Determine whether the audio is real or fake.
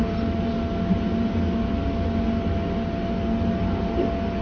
real